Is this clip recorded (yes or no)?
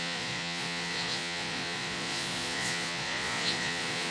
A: no